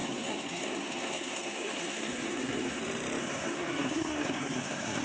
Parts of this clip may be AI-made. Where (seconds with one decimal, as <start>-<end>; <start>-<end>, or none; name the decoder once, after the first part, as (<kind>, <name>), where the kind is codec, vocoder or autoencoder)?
0.0-2.8 (codec, SNAC); 3.2-5.0